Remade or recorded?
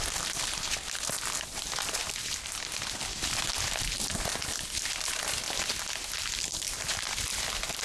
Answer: recorded